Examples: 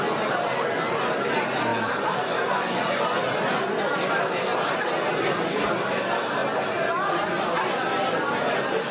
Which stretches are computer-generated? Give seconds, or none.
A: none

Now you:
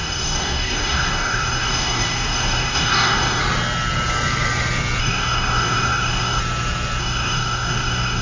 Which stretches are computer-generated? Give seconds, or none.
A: 0.0-3.4 (codec, DAC); 5.0-6.4; 7.0-8.2

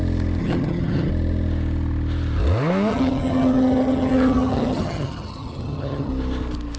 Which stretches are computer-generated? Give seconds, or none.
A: 0.4-1.1 (vocoder, HiFi-GAN); 2.9-6.1

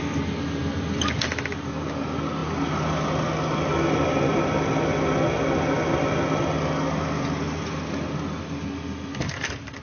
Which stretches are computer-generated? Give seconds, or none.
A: none

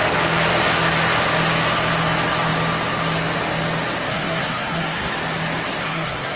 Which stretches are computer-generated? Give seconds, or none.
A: 4.1-5.1 (codec, SNAC); 5.8-6.4

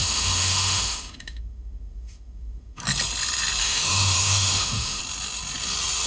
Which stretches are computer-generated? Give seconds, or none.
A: 0.0-2.8 (autoencoder, DAC-VAE); 3.6-5.0

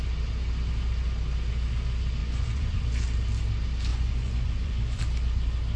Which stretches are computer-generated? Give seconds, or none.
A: 2.2-2.9 (vocoder, Vocos); 3.9-5.0

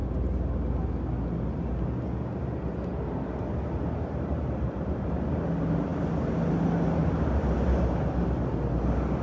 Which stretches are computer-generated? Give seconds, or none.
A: none